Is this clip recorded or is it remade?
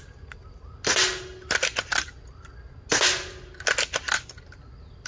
recorded